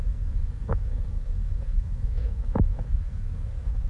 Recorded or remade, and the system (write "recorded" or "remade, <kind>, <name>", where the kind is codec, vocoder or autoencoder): remade, codec, SNAC